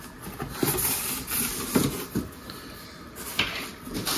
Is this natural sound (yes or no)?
yes